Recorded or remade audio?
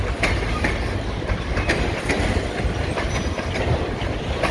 recorded